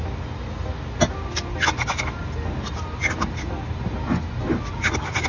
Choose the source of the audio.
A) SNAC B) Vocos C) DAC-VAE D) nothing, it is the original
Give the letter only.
D